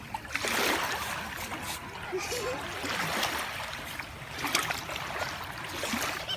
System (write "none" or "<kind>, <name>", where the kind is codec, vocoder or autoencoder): none